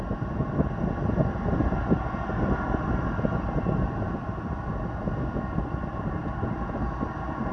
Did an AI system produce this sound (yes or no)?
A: no